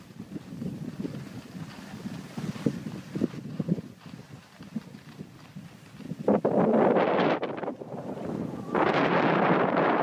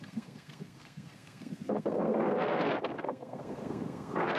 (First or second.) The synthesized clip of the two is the second